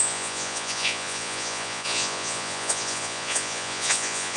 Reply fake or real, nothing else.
fake